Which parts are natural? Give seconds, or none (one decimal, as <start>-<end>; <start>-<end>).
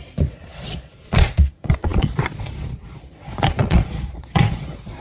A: none